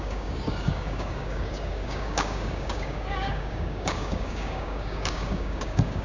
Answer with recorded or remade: remade